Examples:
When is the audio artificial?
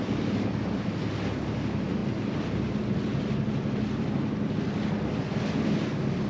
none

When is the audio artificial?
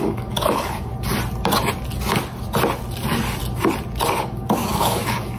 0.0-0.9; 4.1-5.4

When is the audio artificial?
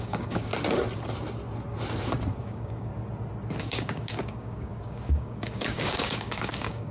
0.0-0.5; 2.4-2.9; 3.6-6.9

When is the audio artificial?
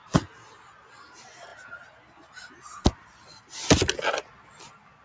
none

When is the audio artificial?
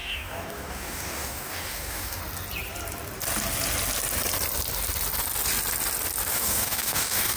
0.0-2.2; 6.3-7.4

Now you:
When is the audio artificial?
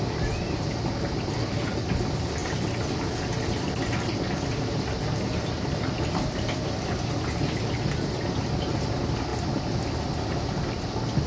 none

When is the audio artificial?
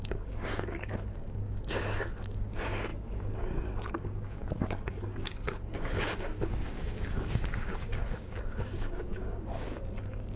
0.0-10.4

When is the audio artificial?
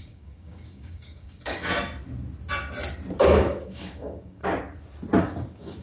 0.0-1.7; 3.2-4.4; 5.2-5.8